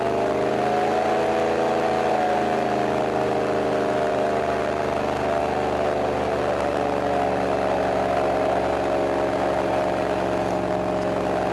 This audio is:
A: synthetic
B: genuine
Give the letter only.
B